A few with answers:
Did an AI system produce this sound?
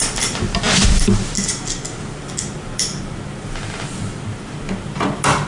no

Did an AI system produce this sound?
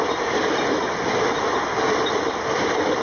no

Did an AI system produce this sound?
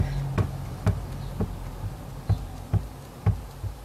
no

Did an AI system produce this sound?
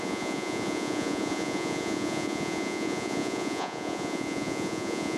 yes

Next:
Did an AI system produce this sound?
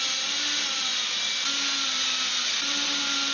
no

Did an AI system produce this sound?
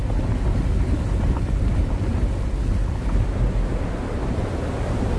yes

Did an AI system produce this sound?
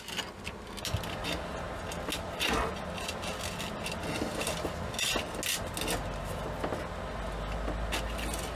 no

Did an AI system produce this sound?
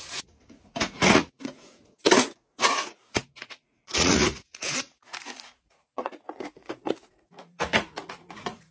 yes